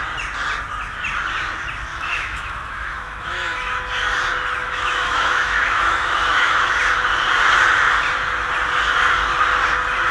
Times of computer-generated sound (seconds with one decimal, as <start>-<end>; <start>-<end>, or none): 1.9-3.8; 4.6-6.7